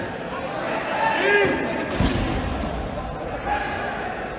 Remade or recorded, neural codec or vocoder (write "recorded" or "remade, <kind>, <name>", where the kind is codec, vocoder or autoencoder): recorded